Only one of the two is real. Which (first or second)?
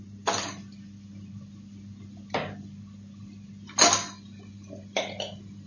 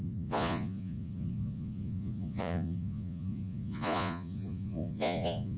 first